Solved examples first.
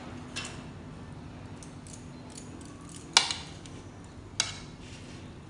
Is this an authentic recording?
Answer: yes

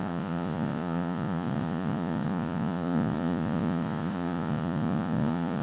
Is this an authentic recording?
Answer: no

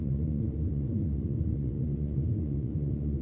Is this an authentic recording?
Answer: no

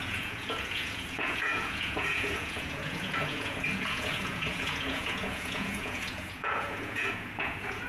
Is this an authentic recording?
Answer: no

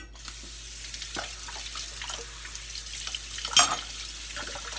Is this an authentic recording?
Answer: yes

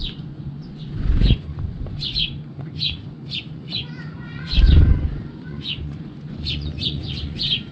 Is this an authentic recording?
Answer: no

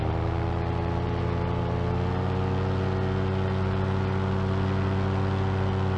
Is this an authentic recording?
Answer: yes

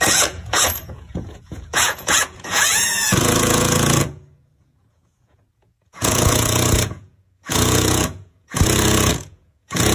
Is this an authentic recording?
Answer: no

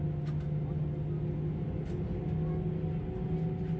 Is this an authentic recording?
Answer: yes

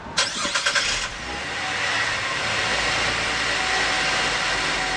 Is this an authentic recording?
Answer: yes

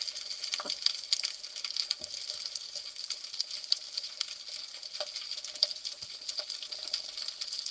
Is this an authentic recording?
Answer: yes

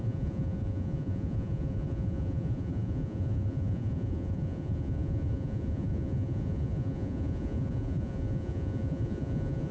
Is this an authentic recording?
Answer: no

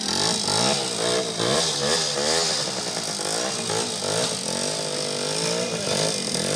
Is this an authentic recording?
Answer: yes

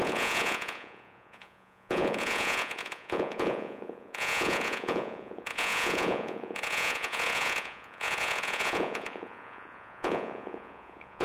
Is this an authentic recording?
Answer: no